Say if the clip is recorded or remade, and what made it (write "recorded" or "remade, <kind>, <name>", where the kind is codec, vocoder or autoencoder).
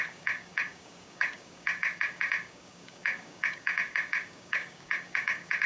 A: remade, codec, DAC